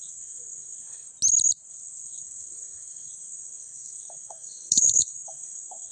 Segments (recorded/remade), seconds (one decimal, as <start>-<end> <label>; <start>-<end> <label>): 0.0-1.1 remade; 1.1-1.7 recorded; 1.7-5.9 remade